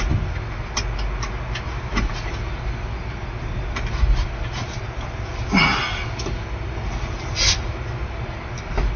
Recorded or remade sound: recorded